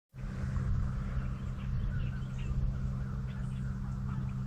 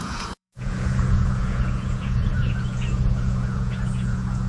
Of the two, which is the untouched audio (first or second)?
first